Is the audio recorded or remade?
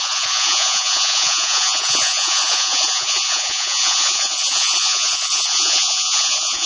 remade